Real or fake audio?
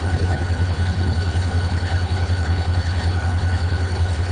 fake